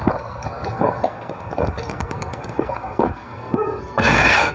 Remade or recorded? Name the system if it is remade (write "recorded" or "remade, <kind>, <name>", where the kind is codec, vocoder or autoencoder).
remade, codec, SNAC